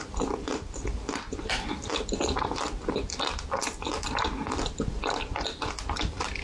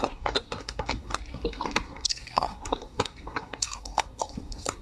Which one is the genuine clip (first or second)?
first